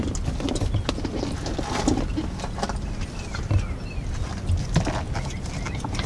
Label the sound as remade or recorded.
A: recorded